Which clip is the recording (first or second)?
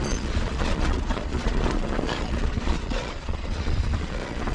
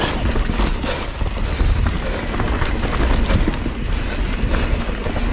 second